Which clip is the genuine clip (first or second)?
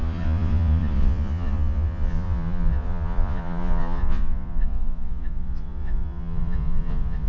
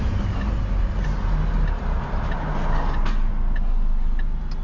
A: second